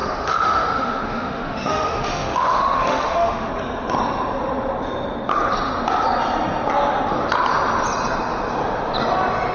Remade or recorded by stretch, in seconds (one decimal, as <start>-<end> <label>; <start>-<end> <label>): 0.0-3.5 remade; 3.5-9.5 recorded